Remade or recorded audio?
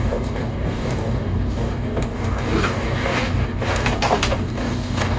remade